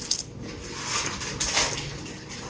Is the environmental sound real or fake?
real